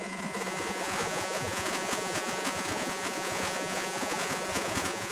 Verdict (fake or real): fake